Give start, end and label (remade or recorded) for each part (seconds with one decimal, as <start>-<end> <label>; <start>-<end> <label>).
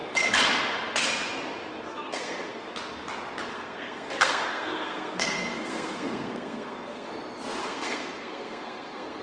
0.0-1.9 recorded; 1.9-2.6 remade; 2.6-3.5 recorded; 3.5-7.1 remade; 7.1-7.6 recorded; 7.6-9.2 remade